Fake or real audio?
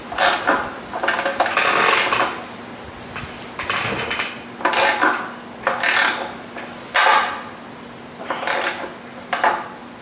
real